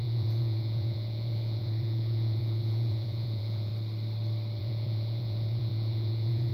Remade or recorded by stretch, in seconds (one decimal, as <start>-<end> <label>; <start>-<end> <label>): 0.0-3.7 remade; 3.7-4.6 recorded; 4.6-6.5 remade